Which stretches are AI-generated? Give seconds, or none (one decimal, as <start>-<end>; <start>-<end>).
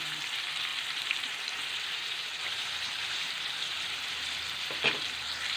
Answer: 0.7-4.1